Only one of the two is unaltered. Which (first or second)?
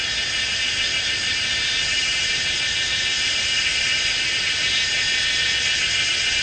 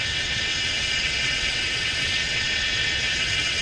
first